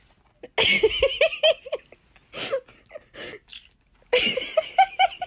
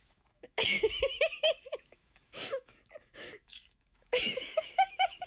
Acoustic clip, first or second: first